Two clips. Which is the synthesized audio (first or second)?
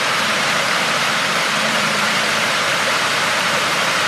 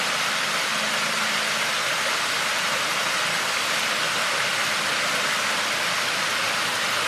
first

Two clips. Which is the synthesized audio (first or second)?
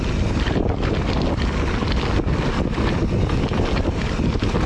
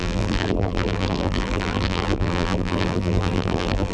second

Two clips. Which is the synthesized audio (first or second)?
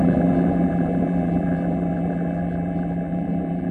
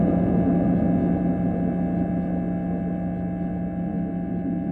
first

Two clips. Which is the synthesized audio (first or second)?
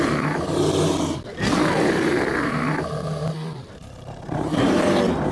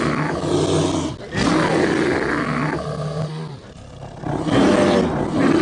first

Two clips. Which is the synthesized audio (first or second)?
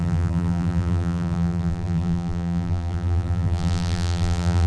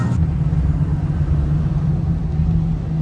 first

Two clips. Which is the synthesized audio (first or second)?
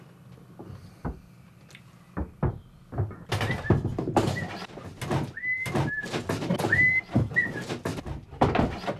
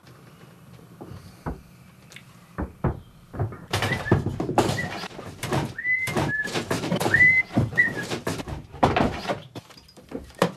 second